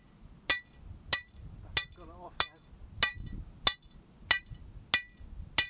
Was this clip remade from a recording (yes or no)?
no